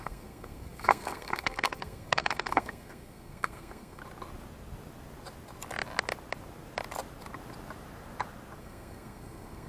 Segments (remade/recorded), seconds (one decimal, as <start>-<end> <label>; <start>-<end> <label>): 0.0-4.0 remade; 4.0-8.6 recorded; 8.6-9.7 remade